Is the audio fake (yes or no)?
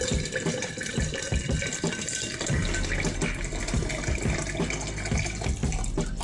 no